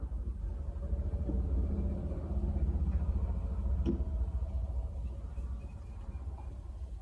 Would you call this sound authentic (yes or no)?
yes